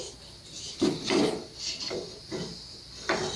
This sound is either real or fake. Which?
real